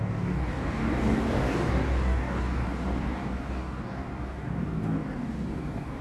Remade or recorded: remade